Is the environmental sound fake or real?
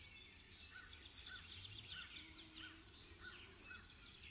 real